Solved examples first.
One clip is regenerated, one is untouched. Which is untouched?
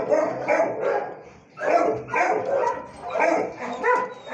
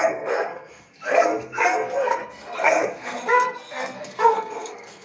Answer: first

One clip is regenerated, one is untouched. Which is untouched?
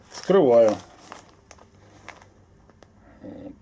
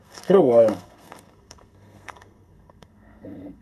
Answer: first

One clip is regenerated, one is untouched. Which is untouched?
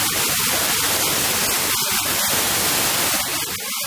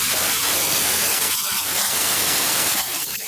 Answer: first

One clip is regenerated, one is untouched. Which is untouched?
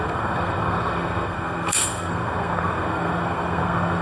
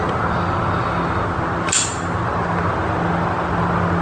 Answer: second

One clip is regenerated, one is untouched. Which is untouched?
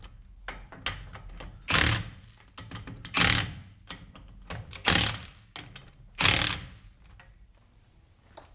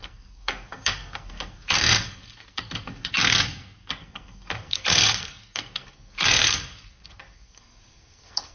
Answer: first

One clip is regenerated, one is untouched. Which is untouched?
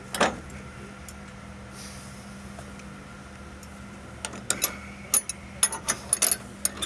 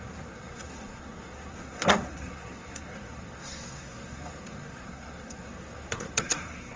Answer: first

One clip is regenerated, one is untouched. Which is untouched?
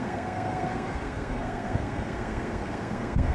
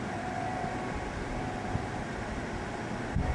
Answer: second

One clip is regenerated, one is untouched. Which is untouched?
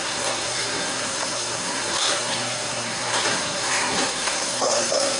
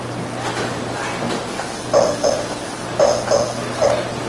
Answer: second